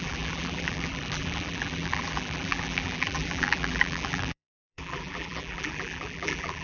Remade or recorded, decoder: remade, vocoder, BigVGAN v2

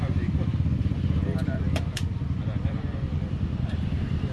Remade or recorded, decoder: remade, vocoder, BigVGAN v2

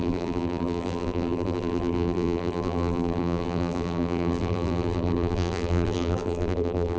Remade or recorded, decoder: remade, vocoder, BigVGAN v2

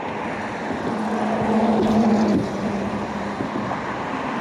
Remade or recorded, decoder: recorded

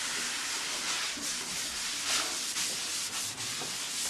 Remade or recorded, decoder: recorded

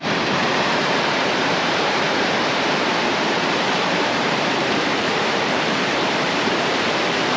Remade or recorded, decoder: remade, vocoder, BigVGAN v2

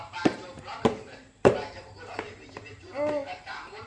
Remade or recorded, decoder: remade, vocoder, BigVGAN v2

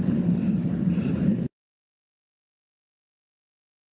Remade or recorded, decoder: remade, vocoder, BigVGAN v2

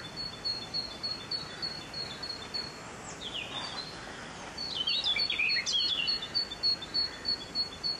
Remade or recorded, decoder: recorded